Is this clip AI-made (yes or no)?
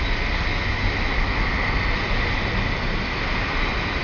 no